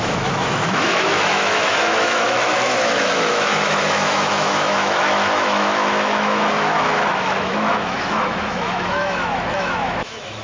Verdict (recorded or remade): remade